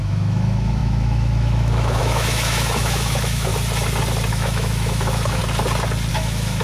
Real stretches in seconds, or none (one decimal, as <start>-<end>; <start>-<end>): 3.5-4.3; 5.4-6.1